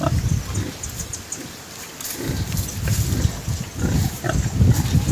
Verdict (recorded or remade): recorded